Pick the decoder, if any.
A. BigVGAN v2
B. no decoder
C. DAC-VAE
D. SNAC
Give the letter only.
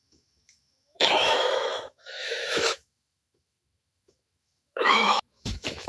C